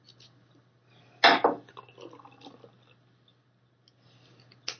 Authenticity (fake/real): real